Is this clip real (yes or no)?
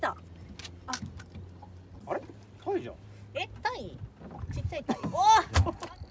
yes